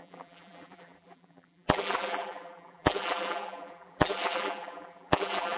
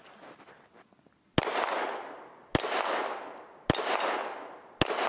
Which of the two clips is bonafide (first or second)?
second